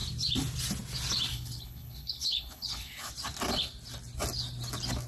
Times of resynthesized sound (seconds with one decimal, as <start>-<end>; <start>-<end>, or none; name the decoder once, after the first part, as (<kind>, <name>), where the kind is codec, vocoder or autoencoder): 1.3-3.1 (codec, HILCodec)